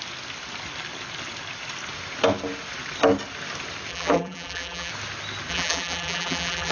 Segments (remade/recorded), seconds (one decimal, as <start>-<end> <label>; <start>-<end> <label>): 0.0-3.9 recorded; 3.9-4.9 remade; 4.9-5.5 recorded; 5.5-6.7 remade